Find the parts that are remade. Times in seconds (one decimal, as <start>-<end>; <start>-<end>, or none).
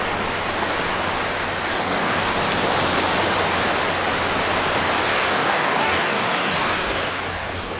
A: 1.7-2.3; 5.1-7.8